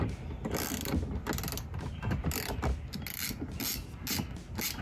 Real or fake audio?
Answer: real